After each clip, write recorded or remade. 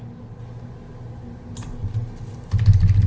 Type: recorded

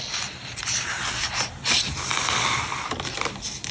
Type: recorded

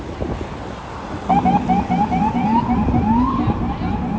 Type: recorded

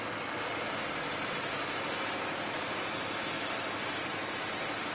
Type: recorded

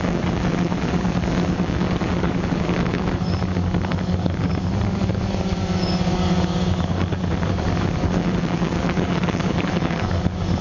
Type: remade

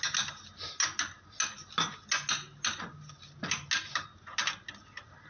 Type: recorded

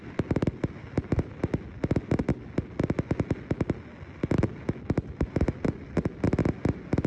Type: recorded